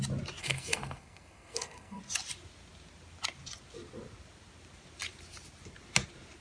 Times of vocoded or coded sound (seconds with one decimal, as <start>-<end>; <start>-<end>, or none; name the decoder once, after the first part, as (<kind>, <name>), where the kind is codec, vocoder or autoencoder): 0.4-2.0 (codec, SNAC)